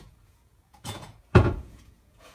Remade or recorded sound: remade